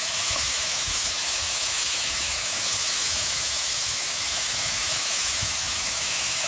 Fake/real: fake